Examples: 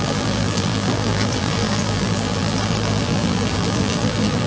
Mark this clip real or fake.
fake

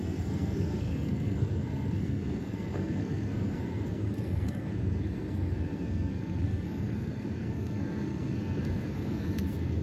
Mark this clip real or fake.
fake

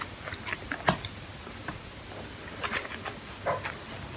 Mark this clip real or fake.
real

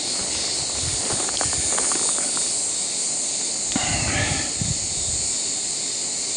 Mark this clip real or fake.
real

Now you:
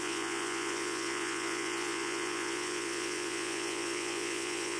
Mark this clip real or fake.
fake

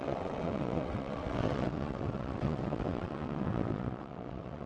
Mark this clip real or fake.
fake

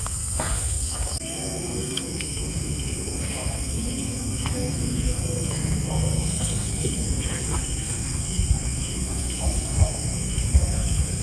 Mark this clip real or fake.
fake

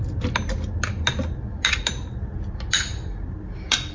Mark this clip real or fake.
real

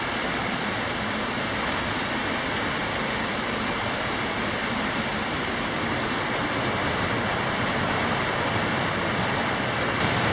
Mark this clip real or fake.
real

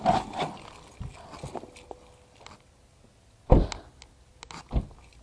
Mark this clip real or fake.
real